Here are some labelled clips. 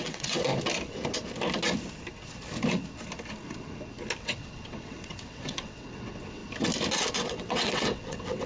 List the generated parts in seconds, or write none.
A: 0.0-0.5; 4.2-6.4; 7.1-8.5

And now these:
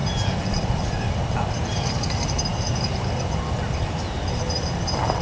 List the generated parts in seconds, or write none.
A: none

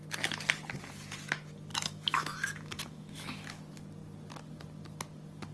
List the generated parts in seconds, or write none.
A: 1.7-3.6

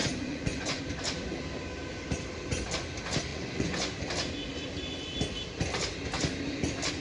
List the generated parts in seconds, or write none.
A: 0.0-0.8; 3.3-4.0

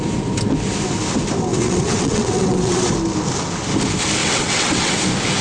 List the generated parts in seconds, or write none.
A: 1.5-2.9; 4.2-5.0